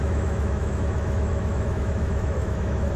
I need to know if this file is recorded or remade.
remade